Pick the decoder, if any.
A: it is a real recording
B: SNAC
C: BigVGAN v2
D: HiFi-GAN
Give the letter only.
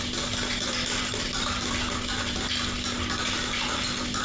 A